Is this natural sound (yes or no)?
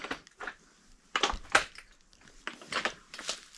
yes